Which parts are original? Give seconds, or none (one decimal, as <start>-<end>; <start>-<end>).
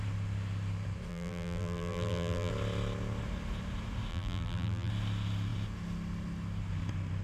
0.0-1.1; 2.5-4.1; 4.9-7.2